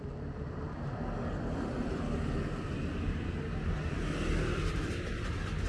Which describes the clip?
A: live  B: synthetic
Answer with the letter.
A